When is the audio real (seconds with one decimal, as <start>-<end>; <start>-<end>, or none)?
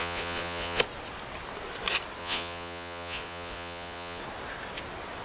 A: 0.8-2.2; 4.2-5.2